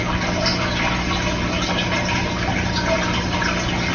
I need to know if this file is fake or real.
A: real